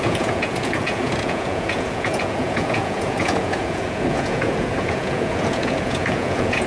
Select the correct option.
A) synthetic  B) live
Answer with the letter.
A